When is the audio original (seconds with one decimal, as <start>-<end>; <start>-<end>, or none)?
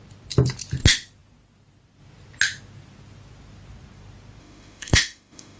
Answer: 0.0-4.4